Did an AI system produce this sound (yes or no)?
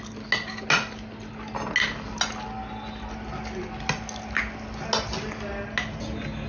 no